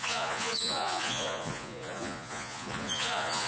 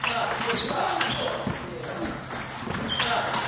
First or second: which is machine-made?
first